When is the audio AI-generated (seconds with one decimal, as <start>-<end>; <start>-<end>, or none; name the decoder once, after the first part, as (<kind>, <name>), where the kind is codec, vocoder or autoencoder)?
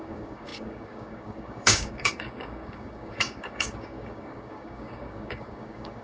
0.0-6.0 (codec, DAC)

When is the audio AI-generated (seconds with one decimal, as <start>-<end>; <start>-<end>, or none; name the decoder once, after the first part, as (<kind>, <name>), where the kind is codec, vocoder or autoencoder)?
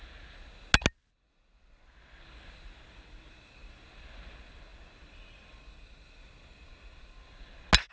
none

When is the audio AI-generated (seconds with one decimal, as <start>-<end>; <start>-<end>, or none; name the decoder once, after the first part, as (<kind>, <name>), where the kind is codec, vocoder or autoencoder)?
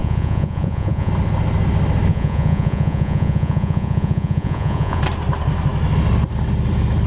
0.0-1.1 (vocoder, Vocos); 2.1-5.0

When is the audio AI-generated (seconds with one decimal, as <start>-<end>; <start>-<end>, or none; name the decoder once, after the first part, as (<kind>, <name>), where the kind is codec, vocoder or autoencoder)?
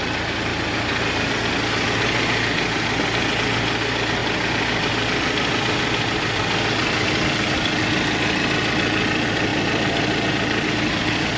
none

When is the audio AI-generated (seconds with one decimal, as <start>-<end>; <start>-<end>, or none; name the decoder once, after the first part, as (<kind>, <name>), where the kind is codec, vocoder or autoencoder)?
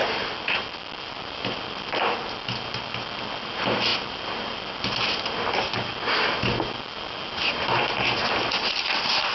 none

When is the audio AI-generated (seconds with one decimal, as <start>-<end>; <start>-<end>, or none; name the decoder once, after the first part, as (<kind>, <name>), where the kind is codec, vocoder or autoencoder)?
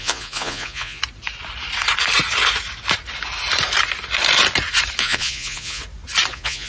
0.0-1.0 (vocoder, Vocos); 5.0-5.8; 6.3-6.7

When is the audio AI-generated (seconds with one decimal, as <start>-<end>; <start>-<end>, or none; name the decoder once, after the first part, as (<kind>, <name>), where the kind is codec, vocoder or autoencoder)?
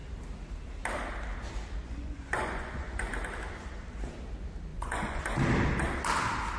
1.8-3.1 (vocoder, Vocos); 4.7-5.2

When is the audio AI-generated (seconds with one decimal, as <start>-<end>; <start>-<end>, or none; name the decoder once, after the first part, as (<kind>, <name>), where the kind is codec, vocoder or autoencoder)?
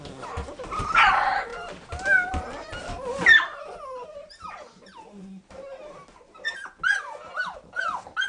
4.1-6.8 (vocoder, BigVGAN v2)